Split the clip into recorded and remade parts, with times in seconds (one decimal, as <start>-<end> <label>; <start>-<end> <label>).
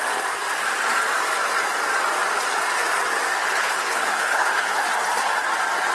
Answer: 0.0-3.4 recorded; 3.4-4.9 remade; 4.9-5.9 recorded